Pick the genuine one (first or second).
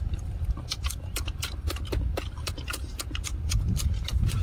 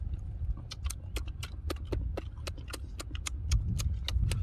second